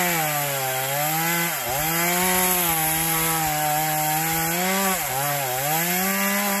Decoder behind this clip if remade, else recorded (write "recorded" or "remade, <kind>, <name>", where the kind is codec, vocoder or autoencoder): recorded